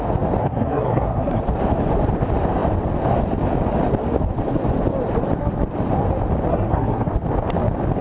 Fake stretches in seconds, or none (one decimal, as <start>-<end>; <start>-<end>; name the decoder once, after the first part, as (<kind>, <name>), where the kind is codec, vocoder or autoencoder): 0.4-1.4 (codec, SNAC); 6.5-7.1